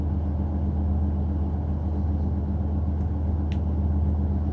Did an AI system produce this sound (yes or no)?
no